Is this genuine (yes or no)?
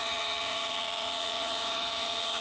no